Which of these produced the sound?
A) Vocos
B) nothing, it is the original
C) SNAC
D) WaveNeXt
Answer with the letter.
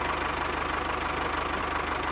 B